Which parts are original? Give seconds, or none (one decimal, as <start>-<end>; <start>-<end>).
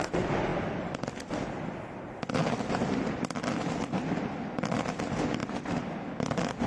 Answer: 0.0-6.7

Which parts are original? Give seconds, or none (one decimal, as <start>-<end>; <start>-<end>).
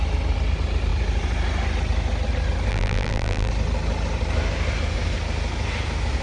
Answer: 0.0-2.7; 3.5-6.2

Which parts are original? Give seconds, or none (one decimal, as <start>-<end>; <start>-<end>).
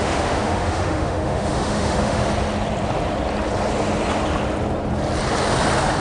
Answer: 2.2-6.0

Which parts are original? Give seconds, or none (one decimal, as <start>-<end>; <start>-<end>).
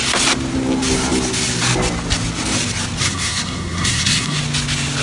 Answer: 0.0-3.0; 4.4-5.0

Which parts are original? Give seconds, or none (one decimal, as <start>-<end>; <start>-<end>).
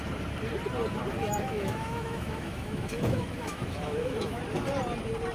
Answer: 0.0-1.2; 4.4-5.3